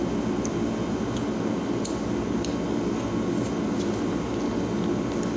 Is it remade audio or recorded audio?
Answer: recorded